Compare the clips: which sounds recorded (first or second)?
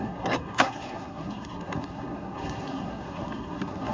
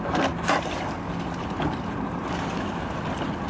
second